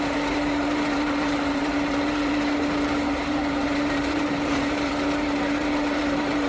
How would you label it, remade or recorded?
remade